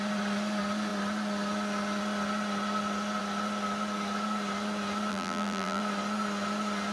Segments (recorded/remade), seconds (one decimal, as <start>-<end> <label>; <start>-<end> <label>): 0.0-5.1 recorded; 5.1-5.8 remade; 5.8-6.9 recorded